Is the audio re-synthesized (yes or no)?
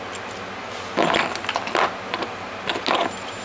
no